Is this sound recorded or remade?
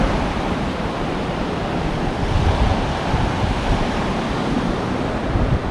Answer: remade